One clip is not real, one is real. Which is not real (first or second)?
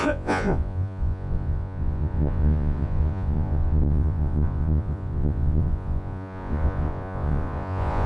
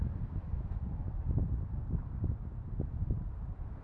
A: first